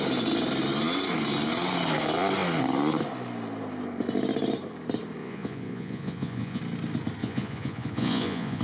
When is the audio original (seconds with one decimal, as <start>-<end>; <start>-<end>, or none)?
0.0-5.2; 6.6-7.2